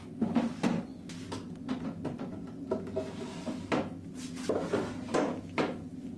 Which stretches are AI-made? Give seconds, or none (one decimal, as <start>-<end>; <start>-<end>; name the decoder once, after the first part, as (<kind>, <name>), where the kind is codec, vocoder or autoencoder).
none